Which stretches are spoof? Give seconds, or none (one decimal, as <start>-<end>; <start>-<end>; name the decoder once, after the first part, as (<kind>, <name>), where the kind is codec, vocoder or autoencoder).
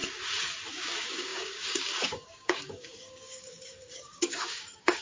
0.7-5.0 (codec, DAC)